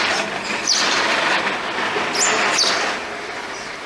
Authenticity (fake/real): real